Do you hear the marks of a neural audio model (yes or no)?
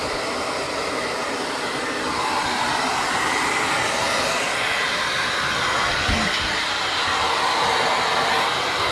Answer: no